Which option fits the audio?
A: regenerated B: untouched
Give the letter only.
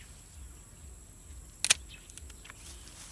B